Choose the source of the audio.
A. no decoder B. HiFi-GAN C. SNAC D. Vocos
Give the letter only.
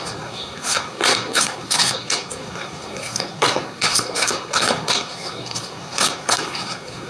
C